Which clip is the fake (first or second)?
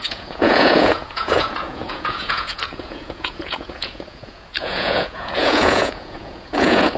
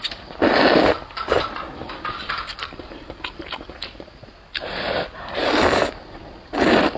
first